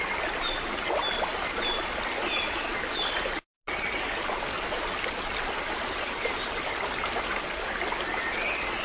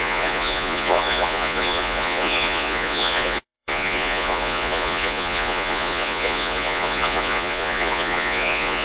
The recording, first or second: first